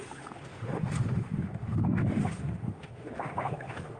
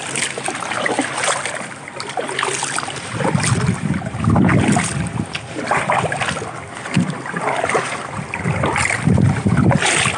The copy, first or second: first